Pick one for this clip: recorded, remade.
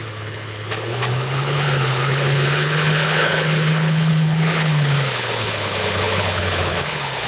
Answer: remade